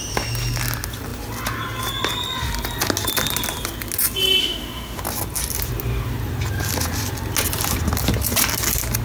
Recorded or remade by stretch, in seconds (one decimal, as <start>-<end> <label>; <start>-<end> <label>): 0.0-4.4 recorded; 4.4-5.0 remade; 5.0-9.0 recorded